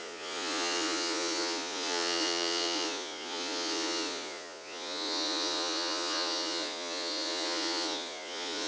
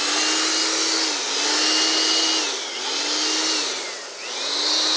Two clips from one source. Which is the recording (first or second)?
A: second